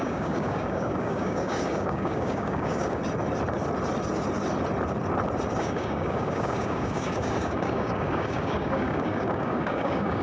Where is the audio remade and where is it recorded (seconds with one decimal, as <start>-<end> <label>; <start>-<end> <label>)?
0.0-3.0 remade; 3.0-5.6 recorded; 5.6-10.2 remade